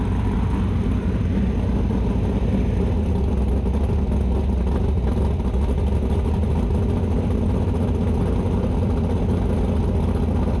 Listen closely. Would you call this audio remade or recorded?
recorded